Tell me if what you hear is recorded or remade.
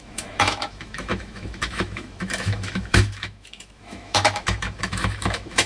remade